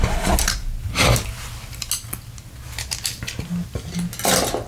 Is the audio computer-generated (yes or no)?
no